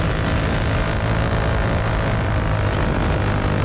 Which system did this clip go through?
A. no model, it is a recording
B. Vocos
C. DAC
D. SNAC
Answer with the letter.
A